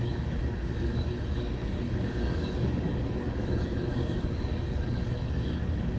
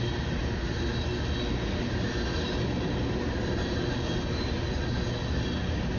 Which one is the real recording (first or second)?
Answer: second